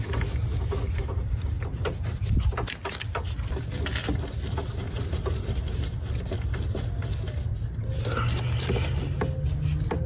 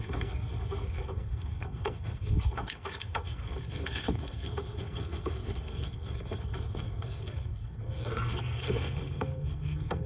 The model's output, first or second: second